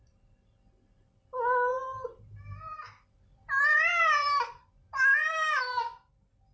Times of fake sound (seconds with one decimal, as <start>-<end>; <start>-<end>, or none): 1.7-5.6